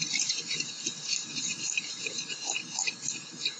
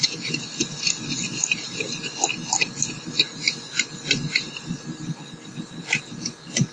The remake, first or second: first